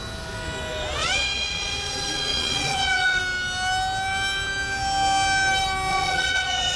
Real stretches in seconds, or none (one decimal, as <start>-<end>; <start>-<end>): 0.0-1.0; 3.2-5.9